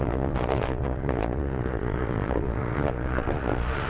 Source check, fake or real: fake